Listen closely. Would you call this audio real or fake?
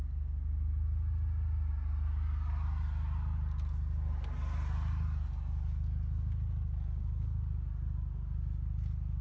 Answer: real